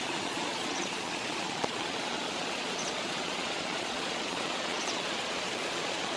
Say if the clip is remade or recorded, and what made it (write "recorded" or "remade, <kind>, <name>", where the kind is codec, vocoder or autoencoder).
remade, vocoder, Vocos